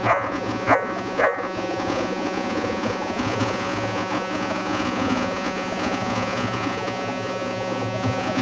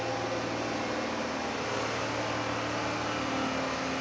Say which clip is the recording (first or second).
second